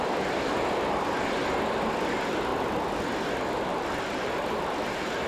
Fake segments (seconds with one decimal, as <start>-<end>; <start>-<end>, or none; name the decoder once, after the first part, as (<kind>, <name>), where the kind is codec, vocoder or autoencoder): 3.7-5.3 (vocoder, BigVGAN v2)